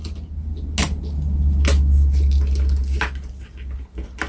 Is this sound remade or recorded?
recorded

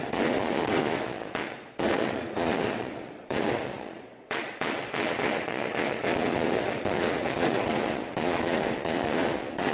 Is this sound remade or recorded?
remade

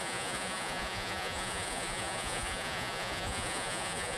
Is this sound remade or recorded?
remade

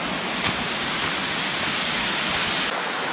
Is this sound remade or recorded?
recorded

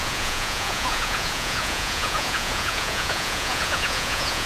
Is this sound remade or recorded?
remade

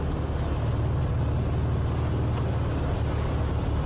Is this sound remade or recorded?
recorded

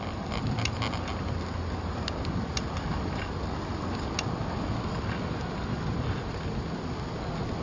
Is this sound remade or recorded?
recorded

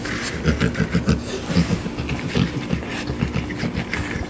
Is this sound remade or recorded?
recorded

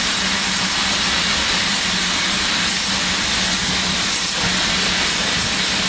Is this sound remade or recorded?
recorded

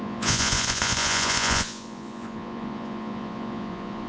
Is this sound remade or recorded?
remade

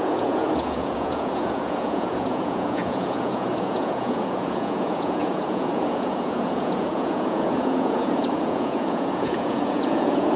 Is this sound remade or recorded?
remade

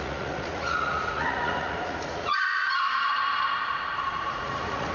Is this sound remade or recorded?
remade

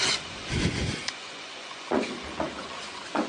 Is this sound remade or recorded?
remade